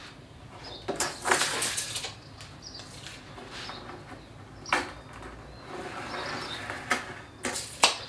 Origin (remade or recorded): recorded